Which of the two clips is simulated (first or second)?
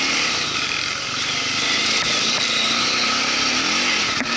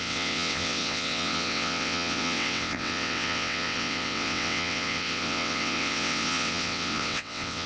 second